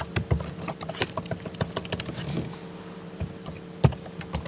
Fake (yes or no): no